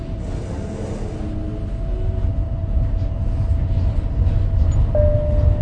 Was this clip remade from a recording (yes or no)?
no